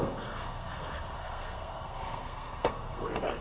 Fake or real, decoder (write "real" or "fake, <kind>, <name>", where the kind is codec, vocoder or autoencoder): fake, codec, SNAC